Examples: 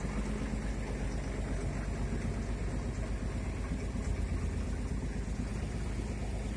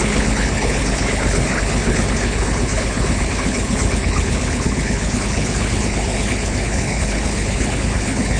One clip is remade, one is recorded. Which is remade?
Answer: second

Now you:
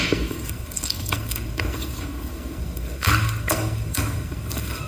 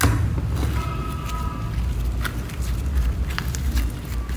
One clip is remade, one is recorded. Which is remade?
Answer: first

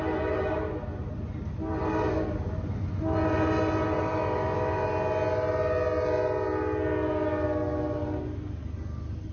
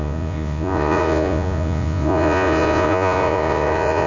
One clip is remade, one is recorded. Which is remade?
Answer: second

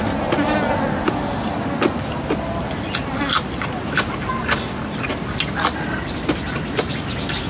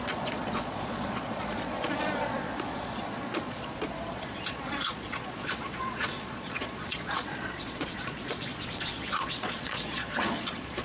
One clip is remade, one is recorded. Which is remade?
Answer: second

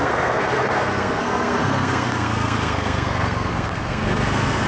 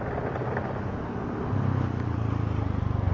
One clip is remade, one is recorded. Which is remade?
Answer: first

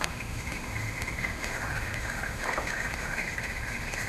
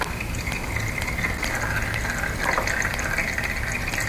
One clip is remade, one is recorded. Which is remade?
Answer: first